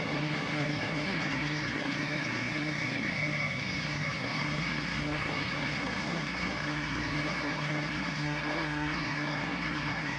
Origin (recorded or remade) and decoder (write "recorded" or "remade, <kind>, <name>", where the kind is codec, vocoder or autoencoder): remade, codec, SNAC